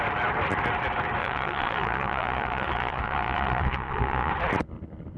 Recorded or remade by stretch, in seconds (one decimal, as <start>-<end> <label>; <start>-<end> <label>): 0.0-1.2 recorded; 1.2-4.3 remade; 4.3-5.2 recorded